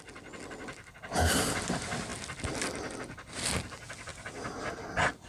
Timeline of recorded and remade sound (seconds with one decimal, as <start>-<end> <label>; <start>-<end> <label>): 0.0-5.3 recorded